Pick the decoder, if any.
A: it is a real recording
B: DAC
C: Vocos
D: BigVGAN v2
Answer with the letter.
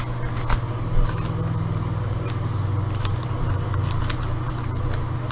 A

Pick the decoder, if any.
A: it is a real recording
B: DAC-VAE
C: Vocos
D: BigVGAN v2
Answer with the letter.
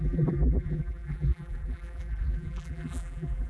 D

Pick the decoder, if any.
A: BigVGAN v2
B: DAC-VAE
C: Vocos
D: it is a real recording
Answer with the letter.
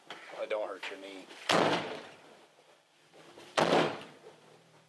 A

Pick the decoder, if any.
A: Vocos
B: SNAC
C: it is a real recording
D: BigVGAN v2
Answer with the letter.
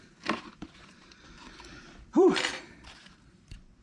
D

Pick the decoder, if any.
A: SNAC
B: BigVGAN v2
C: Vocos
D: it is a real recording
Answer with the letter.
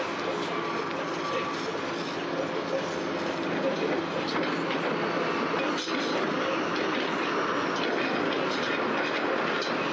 D